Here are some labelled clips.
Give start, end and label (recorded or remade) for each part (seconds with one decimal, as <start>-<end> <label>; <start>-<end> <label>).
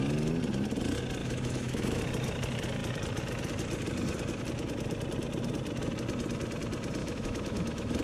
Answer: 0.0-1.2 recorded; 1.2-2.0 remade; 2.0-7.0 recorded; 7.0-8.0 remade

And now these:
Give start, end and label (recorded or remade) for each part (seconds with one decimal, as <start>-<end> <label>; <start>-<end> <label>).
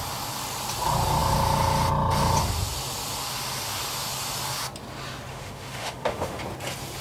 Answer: 0.0-5.3 recorded; 5.3-6.4 remade; 6.4-7.0 recorded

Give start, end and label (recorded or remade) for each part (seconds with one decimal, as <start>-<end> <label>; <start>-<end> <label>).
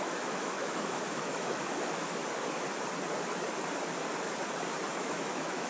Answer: 0.0-2.2 remade; 2.2-4.9 recorded; 4.9-5.7 remade